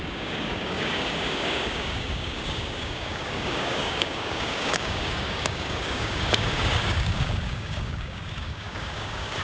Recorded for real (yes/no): no